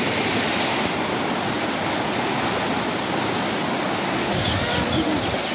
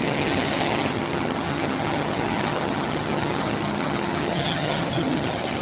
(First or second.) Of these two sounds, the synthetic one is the second